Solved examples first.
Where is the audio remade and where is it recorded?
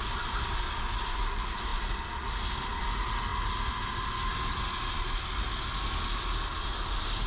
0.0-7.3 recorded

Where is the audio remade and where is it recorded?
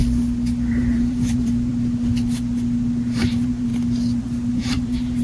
0.0-0.7 recorded; 0.7-1.7 remade; 1.7-3.2 recorded; 3.2-3.7 remade; 3.7-4.5 recorded; 4.5-5.2 remade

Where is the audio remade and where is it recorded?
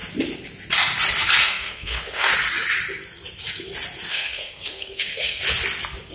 0.0-1.4 recorded; 1.4-2.3 remade; 2.3-4.1 recorded; 4.1-5.4 remade; 5.4-6.1 recorded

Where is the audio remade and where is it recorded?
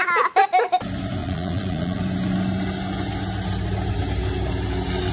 0.0-1.2 recorded; 1.2-2.0 remade; 2.0-5.1 recorded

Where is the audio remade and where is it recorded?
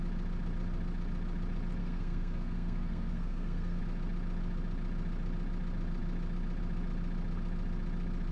0.0-1.8 recorded; 1.8-3.8 remade; 3.8-8.3 recorded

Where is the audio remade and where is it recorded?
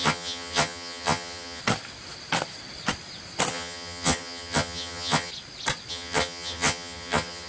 0.0-1.6 remade; 1.6-3.5 recorded; 3.5-5.3 remade; 5.3-5.9 recorded; 5.9-7.5 remade